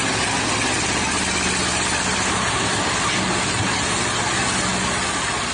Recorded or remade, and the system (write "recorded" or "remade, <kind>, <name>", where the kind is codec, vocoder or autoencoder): recorded